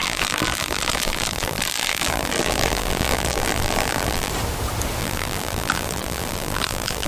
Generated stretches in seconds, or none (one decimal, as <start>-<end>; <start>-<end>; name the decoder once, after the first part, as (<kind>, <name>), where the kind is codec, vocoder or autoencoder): 0.0-4.3 (vocoder, BigVGAN v2); 5.0-7.1